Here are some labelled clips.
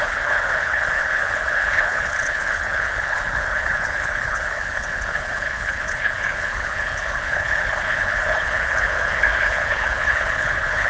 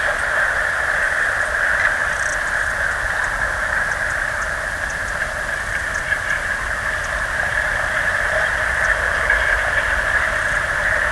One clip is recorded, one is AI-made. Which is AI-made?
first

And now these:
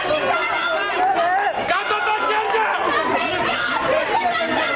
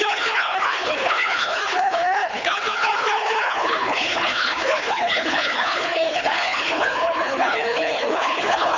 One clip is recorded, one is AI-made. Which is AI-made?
second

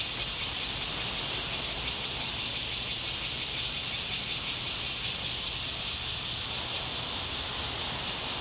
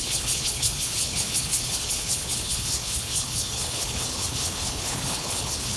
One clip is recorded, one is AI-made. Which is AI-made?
second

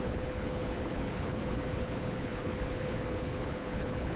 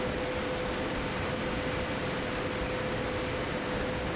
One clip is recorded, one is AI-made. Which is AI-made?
first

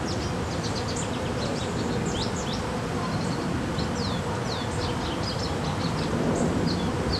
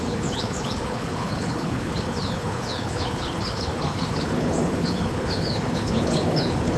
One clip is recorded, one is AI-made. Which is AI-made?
second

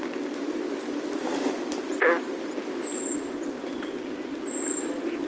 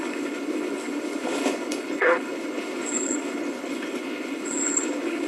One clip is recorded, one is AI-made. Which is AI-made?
second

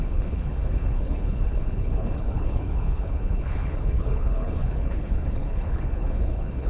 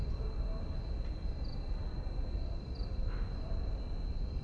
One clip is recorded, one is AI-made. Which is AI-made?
first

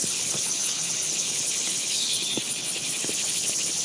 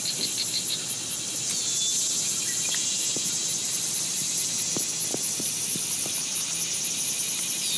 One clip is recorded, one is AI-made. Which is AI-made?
first